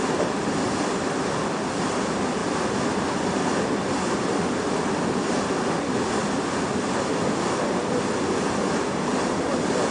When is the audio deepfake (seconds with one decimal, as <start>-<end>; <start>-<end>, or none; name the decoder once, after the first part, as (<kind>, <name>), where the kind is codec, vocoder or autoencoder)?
none